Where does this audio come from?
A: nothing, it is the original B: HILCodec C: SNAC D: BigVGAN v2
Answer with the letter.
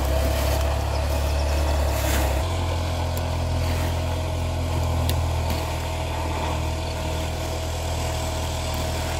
A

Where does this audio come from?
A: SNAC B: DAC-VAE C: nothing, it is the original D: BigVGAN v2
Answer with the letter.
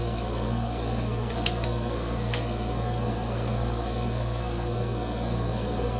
A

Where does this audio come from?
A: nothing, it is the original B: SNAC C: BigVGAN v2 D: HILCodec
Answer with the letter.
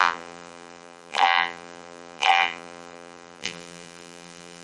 C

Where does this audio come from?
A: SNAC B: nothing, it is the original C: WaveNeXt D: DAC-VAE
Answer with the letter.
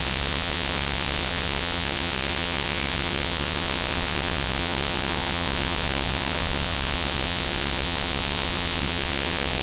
C